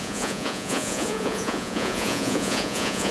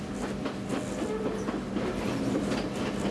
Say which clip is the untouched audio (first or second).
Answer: second